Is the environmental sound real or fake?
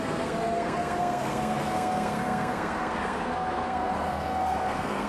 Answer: fake